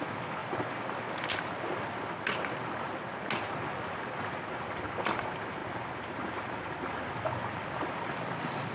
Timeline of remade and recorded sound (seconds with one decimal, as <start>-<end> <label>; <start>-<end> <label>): 0.0-8.7 recorded